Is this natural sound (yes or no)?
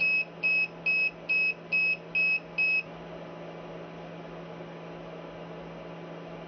yes